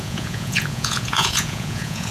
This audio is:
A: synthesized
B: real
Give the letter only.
A